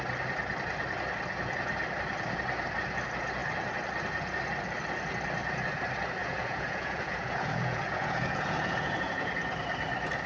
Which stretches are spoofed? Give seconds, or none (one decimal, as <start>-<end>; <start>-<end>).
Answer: 6.2-9.3